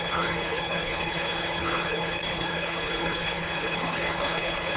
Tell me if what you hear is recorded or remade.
remade